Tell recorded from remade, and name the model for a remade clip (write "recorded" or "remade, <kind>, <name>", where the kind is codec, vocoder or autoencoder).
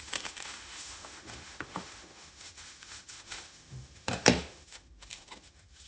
remade, autoencoder, DAC-VAE